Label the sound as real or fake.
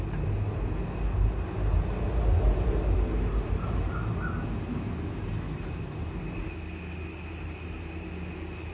real